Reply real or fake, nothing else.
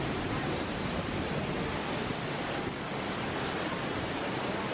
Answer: fake